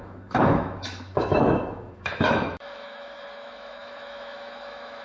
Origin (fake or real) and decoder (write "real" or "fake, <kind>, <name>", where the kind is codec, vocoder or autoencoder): fake, autoencoder, DAC-VAE